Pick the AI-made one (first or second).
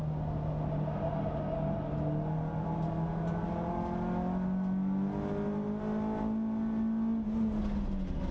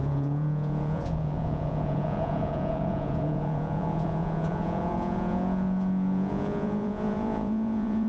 second